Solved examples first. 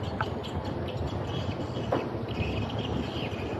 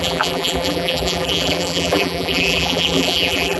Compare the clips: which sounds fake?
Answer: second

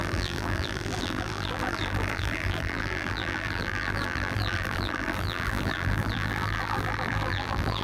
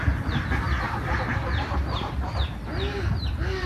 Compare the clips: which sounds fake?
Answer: first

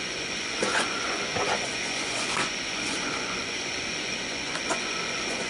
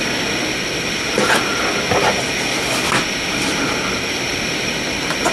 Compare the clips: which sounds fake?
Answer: first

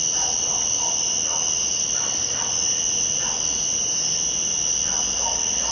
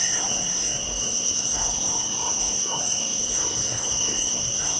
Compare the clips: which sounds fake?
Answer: second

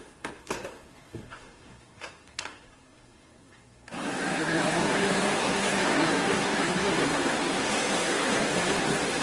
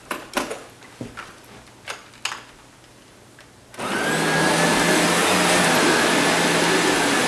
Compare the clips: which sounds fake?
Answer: first